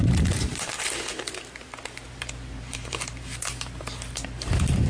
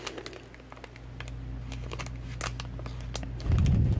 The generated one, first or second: first